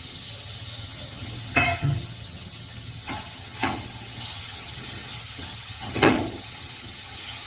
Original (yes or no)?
no